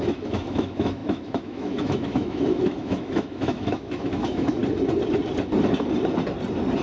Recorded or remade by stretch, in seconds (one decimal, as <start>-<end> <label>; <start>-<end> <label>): 0.0-4.6 remade; 4.6-6.8 recorded